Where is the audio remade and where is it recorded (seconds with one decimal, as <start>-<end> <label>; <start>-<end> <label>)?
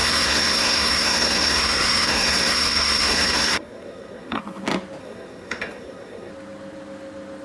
0.0-4.4 remade; 4.4-5.0 recorded; 5.0-6.3 remade; 6.3-7.4 recorded